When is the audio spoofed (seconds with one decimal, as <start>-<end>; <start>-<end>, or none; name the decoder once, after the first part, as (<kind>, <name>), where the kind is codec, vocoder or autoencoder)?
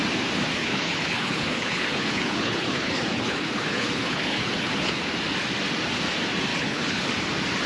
0.6-4.9 (codec, HILCodec); 6.5-7.1